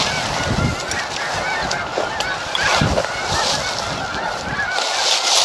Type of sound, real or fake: real